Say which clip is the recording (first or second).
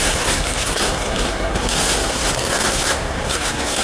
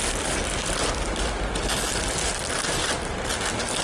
second